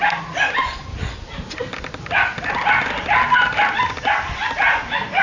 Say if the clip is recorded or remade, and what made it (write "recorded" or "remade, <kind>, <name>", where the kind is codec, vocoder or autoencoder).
recorded